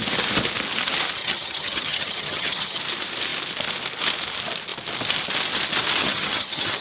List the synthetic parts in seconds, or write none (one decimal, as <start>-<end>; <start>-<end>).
1.2-2.8; 6.0-6.8